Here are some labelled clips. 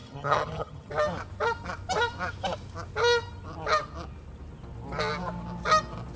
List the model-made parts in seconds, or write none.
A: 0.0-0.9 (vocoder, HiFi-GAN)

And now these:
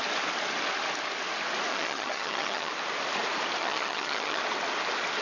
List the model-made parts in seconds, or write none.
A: 1.7-2.7 (vocoder, HiFi-GAN); 3.6-4.4